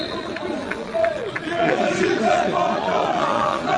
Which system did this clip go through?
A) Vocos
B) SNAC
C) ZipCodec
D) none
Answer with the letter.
A